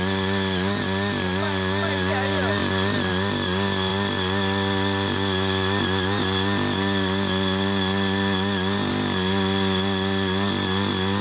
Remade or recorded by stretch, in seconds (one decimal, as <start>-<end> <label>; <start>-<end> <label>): 0.0-11.2 recorded